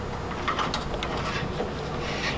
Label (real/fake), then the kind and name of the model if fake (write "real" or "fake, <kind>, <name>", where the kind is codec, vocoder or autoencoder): real